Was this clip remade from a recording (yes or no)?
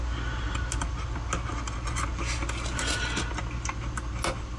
no